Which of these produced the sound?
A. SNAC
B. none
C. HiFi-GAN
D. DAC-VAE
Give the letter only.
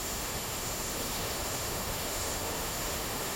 D